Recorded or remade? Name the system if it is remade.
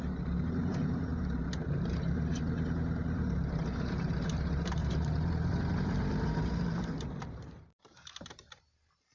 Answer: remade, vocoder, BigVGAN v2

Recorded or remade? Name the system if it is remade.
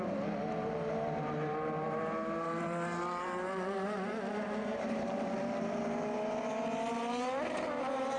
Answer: remade, vocoder, BigVGAN v2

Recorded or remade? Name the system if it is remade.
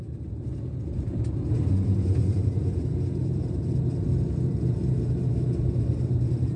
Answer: remade, vocoder, BigVGAN v2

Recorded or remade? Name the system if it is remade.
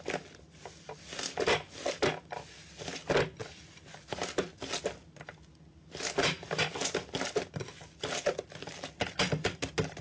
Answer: recorded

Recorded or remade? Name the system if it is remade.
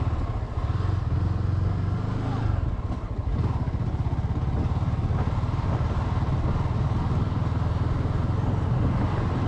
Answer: recorded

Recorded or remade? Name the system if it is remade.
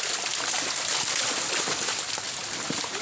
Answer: recorded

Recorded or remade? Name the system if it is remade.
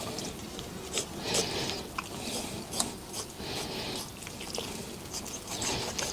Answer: recorded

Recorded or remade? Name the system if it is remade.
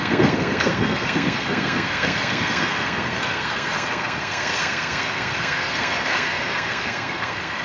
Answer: remade, codec, SNAC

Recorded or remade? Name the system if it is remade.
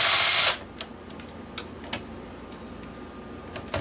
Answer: recorded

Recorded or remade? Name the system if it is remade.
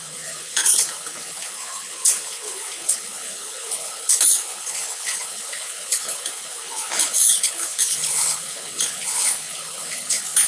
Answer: remade, codec, HILCodec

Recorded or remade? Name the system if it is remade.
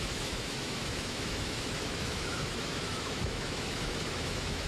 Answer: remade, autoencoder, DAC-VAE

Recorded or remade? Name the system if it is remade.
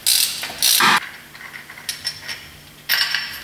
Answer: recorded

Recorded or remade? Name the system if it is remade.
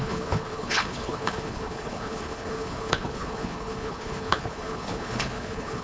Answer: remade, codec, HILCodec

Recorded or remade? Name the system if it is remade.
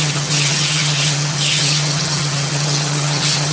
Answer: remade, vocoder, HiFi-GAN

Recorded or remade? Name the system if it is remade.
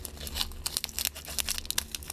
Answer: recorded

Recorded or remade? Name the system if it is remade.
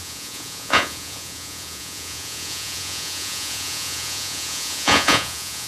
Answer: remade, vocoder, Vocos